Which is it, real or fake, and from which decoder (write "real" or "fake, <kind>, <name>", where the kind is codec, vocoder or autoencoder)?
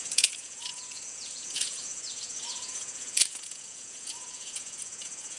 fake, vocoder, Vocos